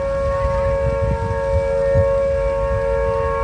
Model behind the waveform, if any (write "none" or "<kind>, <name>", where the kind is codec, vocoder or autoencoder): none